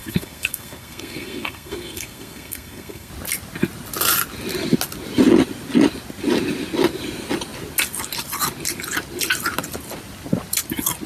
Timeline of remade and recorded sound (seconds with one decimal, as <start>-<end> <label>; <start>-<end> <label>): 0.0-3.1 remade; 3.1-11.1 recorded